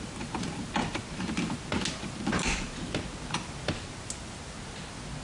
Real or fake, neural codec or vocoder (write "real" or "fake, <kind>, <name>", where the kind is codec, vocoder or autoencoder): real